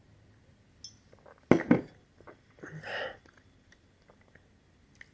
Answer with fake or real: real